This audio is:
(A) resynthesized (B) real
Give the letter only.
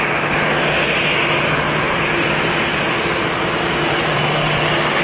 B